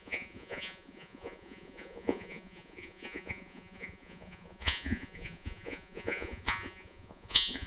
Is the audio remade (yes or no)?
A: yes